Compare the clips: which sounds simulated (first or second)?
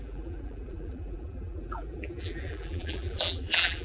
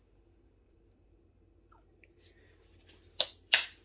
first